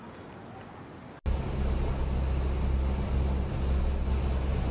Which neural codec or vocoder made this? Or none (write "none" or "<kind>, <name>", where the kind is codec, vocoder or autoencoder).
none